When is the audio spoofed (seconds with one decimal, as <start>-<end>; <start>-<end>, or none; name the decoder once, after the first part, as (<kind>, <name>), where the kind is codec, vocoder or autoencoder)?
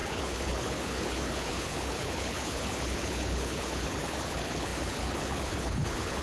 0.0-6.2 (codec, HILCodec)